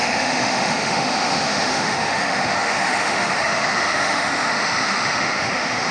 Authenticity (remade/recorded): remade